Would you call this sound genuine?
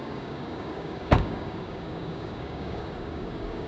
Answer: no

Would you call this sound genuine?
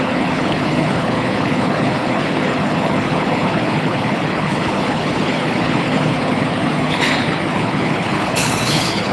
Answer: no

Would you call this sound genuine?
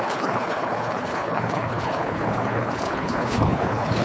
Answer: no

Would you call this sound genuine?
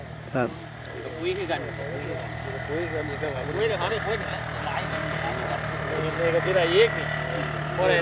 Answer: yes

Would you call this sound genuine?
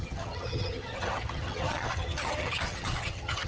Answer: no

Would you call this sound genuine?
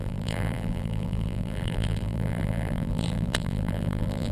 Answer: no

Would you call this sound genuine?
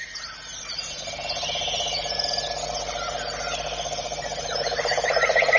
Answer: yes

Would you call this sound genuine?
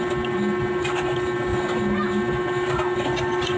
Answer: yes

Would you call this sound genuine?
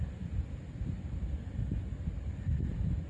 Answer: yes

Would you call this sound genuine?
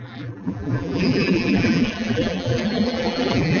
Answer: no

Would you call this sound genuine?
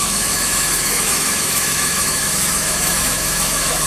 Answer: no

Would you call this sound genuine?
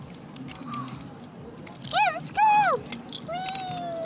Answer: yes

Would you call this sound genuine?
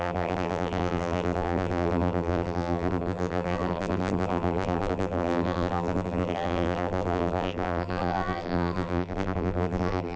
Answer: no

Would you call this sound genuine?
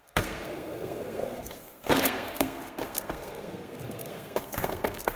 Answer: no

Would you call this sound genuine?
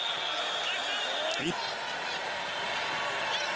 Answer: yes